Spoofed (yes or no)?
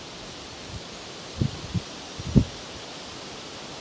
no